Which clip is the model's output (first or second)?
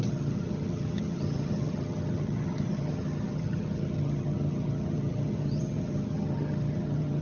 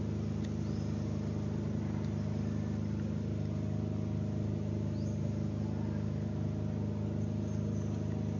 first